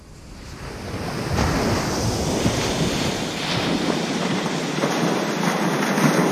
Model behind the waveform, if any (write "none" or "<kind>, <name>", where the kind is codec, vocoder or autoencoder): none